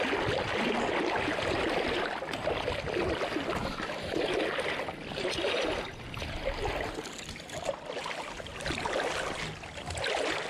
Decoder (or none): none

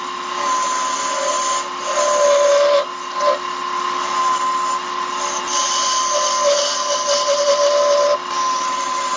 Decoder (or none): none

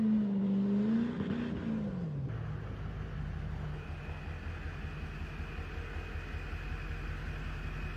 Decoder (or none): none